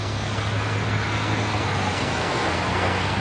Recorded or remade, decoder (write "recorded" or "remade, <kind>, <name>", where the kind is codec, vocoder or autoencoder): remade, codec, SNAC